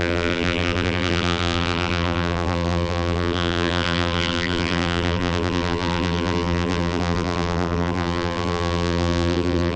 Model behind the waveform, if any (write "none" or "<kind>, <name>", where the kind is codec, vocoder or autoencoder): vocoder, BigVGAN v2